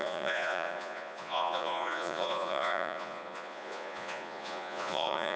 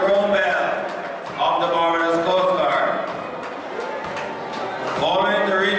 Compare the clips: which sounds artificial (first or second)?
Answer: first